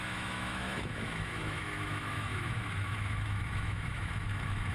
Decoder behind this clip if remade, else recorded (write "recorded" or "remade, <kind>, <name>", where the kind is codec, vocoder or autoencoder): remade, autoencoder, DAC-VAE